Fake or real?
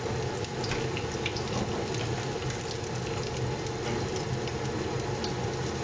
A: real